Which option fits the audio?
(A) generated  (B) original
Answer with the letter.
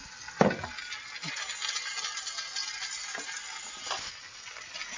B